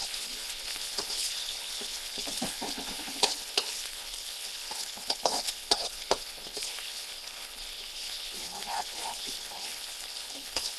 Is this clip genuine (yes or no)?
no